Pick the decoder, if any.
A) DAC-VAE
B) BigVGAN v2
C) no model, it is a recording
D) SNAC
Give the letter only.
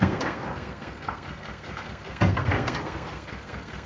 D